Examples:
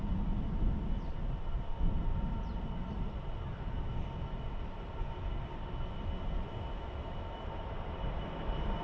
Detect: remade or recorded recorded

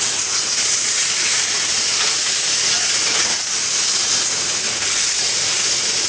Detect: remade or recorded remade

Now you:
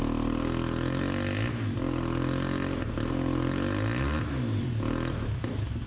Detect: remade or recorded recorded